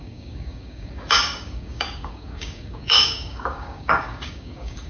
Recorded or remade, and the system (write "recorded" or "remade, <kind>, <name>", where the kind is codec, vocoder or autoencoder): remade, codec, DAC